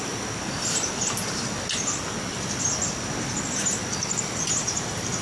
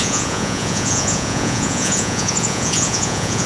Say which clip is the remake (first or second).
second